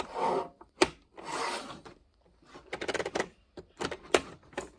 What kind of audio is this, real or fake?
real